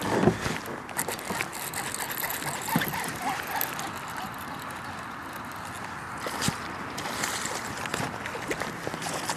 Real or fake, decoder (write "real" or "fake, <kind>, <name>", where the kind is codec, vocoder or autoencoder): real